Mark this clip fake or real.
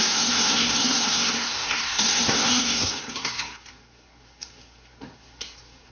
fake